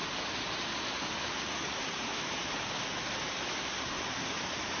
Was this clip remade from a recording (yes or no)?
no